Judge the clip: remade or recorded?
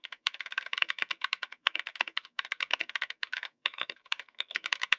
remade